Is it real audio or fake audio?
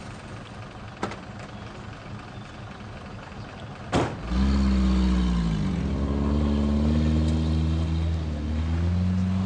real